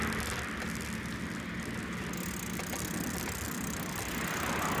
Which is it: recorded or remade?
recorded